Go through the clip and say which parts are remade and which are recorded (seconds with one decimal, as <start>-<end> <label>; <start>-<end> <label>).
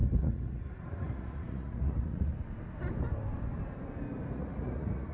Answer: 0.0-2.3 remade; 2.3-4.3 recorded; 4.3-5.1 remade